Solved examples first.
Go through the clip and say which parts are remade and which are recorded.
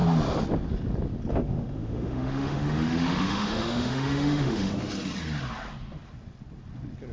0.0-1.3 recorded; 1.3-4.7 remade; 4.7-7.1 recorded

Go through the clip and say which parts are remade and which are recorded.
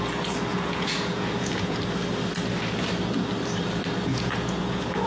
0.0-0.5 recorded; 0.5-1.8 remade; 1.8-4.1 recorded; 4.1-5.1 remade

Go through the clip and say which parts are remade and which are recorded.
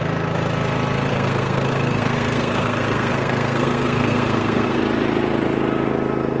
0.0-1.1 recorded; 1.1-4.8 remade; 4.8-6.4 recorded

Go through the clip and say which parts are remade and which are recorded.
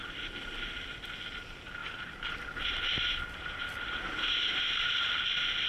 0.0-1.8 recorded; 1.8-5.1 remade; 5.1-5.7 recorded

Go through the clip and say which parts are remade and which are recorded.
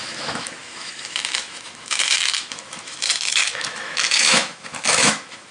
0.0-5.5 remade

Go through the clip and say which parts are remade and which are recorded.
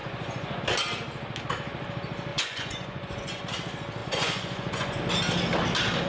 0.0-0.6 remade; 0.6-2.3 recorded; 2.3-3.4 remade; 3.4-4.0 recorded; 4.0-5.0 remade; 5.0-6.1 recorded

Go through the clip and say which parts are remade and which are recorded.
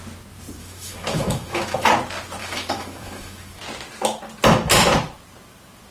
0.0-0.6 recorded; 0.6-1.9 remade; 1.9-2.4 recorded; 2.4-3.6 remade; 3.6-5.9 recorded